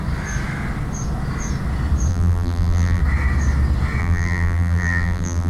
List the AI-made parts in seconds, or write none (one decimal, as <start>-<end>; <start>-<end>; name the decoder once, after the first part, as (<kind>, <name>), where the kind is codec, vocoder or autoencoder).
2.1-3.0 (vocoder, BigVGAN v2); 4.0-5.5